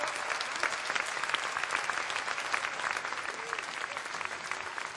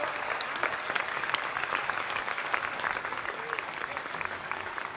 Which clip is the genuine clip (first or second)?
first